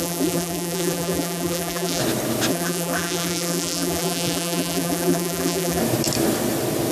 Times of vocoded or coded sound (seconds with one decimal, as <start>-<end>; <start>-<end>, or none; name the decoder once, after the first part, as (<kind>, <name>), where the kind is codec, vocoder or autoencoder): 0.0-2.0 (vocoder, BigVGAN v2); 2.5-5.8